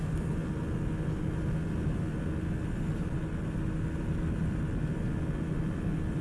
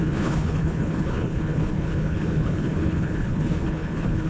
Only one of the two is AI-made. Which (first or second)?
second